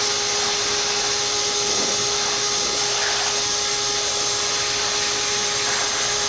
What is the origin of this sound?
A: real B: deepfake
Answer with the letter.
A